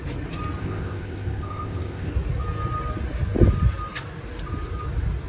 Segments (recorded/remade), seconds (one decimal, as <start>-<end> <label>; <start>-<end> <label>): 0.0-0.6 recorded; 0.6-2.1 remade; 2.1-5.3 recorded